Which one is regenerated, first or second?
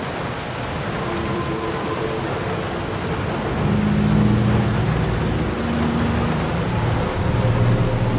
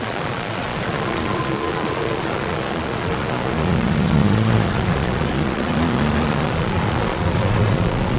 second